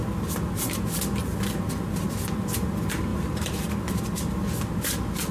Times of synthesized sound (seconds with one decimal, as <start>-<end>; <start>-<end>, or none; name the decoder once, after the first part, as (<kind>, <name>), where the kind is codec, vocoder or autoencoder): 3.1-3.7 (vocoder, BigVGAN v2)